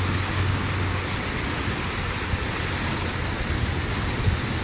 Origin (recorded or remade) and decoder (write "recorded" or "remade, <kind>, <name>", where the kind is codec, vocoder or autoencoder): recorded